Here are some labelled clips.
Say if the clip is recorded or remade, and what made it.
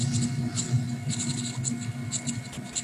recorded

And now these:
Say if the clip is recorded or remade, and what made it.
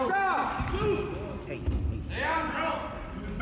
recorded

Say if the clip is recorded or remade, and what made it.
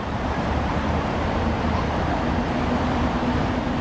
remade, vocoder, BigVGAN v2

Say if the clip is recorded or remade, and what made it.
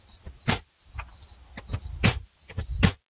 recorded